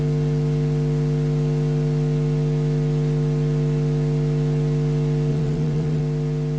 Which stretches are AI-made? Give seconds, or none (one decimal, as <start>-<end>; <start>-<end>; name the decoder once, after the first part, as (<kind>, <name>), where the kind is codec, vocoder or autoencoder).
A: 5.3-6.0 (vocoder, WaveNeXt)